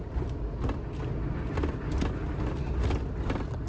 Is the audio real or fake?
real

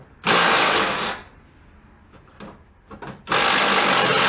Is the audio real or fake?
real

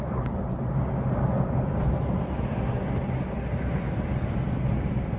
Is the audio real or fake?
real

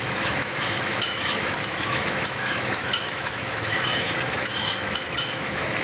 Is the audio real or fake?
fake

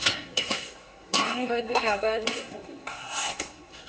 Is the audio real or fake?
fake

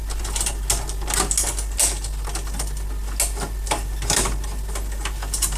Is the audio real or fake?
real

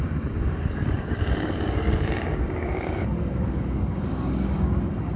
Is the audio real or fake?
fake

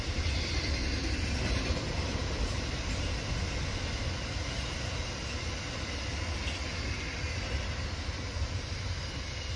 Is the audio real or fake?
real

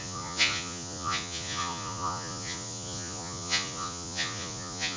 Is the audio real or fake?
fake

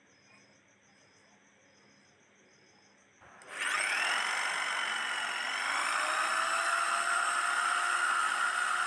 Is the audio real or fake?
real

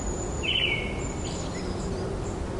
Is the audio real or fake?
real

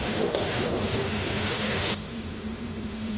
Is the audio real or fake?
fake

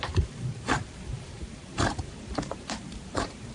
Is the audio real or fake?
fake